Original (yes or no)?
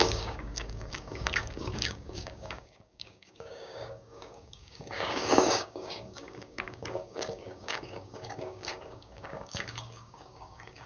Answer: no